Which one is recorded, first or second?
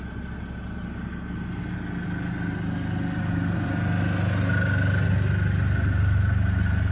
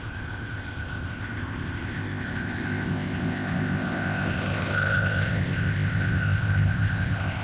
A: first